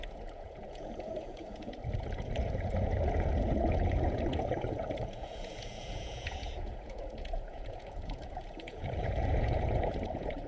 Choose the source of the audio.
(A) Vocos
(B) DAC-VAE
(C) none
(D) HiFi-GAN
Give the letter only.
A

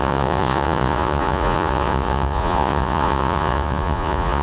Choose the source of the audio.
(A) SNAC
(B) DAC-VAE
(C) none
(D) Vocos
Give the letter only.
D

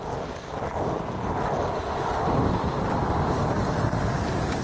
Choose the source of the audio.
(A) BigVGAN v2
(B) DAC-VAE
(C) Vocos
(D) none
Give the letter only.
D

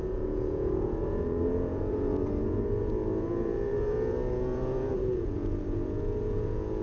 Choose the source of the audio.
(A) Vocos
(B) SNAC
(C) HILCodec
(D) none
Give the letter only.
A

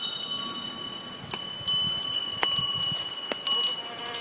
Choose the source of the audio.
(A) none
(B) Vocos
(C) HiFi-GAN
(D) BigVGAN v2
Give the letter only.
A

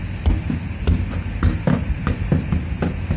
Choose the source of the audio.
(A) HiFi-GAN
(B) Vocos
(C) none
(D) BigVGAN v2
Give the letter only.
C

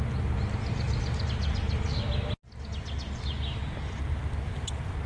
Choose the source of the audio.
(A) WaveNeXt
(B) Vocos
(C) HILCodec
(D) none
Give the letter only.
D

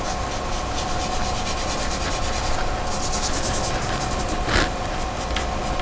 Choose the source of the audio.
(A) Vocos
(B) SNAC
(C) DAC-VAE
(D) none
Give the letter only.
D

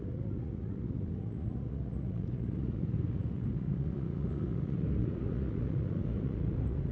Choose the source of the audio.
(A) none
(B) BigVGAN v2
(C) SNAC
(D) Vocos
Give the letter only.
D